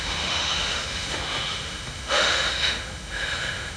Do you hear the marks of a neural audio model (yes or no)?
yes